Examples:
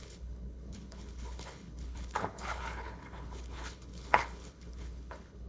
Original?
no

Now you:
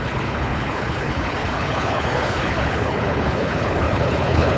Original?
no